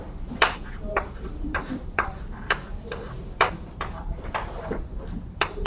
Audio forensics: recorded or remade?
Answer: remade